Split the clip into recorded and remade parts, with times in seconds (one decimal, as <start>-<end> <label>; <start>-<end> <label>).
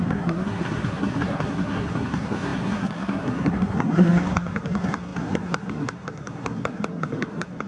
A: 0.0-7.7 remade